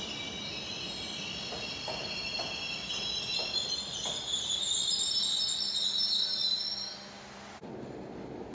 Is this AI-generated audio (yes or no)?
no